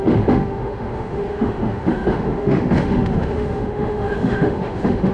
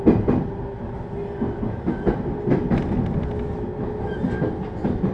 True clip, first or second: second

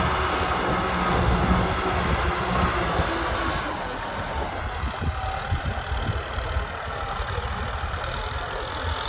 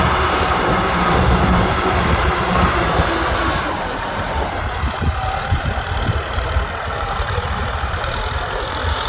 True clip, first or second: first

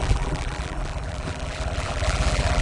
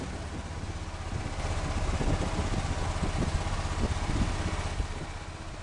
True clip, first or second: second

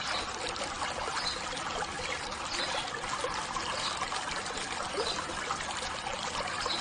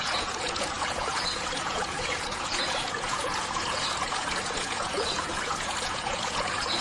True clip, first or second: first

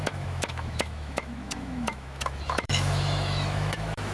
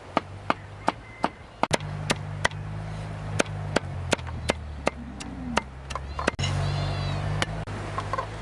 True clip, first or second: second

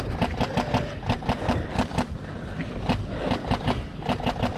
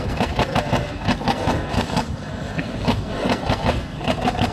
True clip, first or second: first